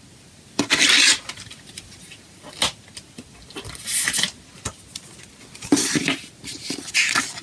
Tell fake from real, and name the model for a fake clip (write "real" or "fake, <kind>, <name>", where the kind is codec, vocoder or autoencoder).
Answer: real